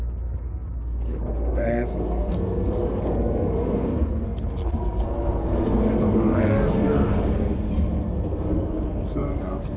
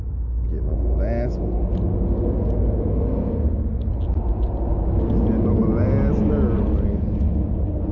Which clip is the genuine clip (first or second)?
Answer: second